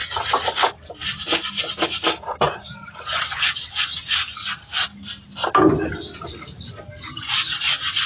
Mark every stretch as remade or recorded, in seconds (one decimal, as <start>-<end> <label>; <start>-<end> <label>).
0.0-8.1 recorded